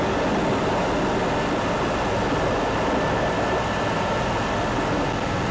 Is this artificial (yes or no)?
no